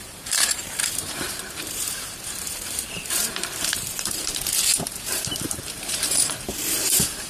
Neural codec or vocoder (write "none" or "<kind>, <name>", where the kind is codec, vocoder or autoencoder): vocoder, BigVGAN v2